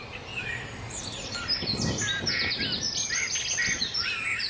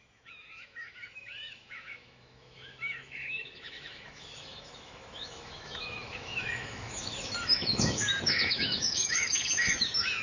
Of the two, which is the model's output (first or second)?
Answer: second